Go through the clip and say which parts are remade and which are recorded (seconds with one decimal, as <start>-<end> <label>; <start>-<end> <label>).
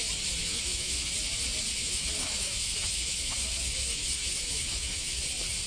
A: 0.0-0.4 recorded; 0.4-1.1 remade; 1.1-1.8 recorded; 1.8-5.2 remade; 5.2-5.7 recorded